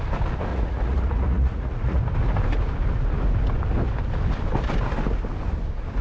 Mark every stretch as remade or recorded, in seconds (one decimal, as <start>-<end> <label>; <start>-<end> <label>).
0.0-0.5 recorded; 0.5-2.0 remade; 2.0-6.0 recorded